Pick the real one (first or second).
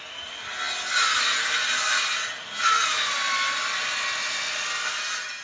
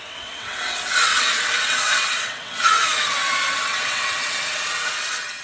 first